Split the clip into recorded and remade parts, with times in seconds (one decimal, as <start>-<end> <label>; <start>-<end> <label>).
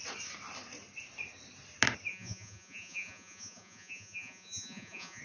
0.0-2.1 recorded; 2.1-5.2 remade